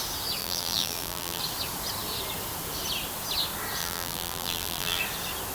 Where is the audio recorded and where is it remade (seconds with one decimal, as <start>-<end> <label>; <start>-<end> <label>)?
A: 0.0-0.4 recorded; 0.4-1.4 remade; 1.4-3.8 recorded; 3.8-5.0 remade; 5.0-5.5 recorded